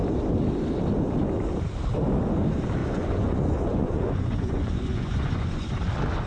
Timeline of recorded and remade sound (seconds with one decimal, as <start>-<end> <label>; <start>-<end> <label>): 0.0-2.8 recorded; 2.8-5.7 remade; 5.7-6.3 recorded